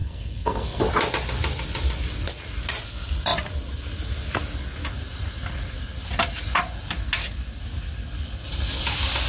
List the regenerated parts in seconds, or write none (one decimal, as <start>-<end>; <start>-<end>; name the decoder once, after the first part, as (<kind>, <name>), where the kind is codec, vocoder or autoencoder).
0.0-0.8 (codec, SNAC)